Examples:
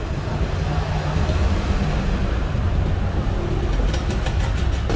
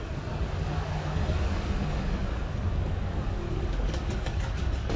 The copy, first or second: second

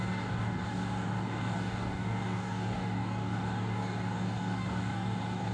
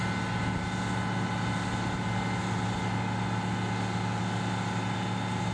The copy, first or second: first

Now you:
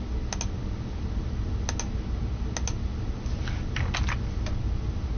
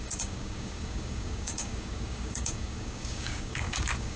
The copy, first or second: second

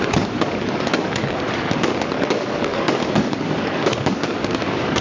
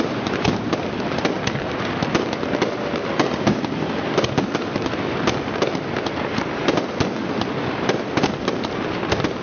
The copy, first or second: first